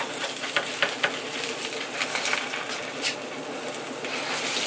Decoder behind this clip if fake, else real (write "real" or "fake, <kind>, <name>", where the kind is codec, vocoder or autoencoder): real